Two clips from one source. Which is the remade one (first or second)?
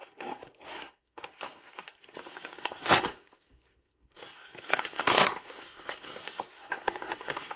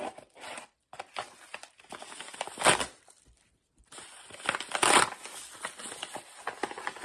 first